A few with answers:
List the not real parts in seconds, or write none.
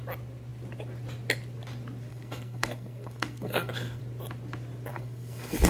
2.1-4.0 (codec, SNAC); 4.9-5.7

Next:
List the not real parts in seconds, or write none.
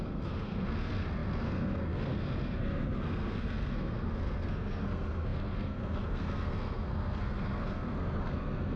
0.0-8.8 (codec, SNAC)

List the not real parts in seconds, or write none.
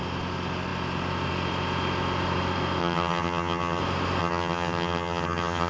2.8-3.8 (vocoder, HiFi-GAN); 4.2-5.7